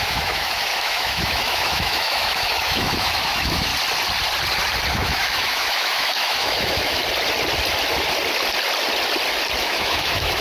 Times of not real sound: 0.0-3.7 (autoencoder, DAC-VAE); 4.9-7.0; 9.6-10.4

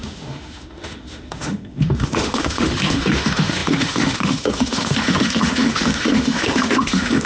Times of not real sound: 0.0-7.3 (autoencoder, DAC-VAE)